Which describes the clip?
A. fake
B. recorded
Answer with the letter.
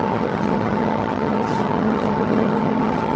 A